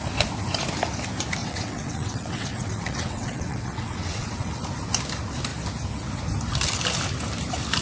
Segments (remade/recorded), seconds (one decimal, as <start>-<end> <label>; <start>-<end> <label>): 0.0-1.4 recorded; 1.4-4.6 remade; 4.6-7.8 recorded